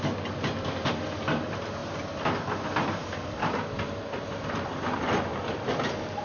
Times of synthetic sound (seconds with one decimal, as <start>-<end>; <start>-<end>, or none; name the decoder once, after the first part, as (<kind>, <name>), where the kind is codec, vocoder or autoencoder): 1.8-5.2 (vocoder, BigVGAN v2)